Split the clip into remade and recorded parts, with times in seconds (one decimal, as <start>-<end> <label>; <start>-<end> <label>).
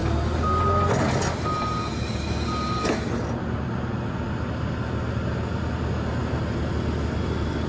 0.0-7.7 recorded